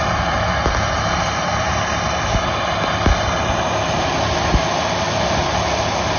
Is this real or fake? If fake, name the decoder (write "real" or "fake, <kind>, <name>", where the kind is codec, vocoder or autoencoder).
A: real